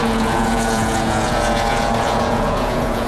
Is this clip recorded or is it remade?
remade